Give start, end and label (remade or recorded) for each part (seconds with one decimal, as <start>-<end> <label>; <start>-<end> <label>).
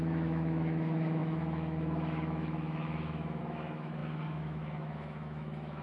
0.0-5.8 remade